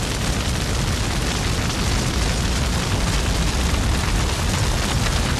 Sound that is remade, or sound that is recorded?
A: recorded